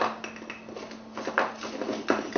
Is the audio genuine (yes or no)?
yes